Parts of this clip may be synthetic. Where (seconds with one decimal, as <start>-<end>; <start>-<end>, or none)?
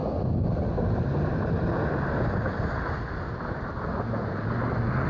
none